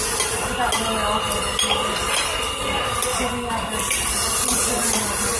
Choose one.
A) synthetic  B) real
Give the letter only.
B